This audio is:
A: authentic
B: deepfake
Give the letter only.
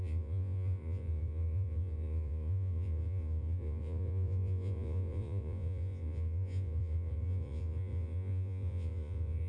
B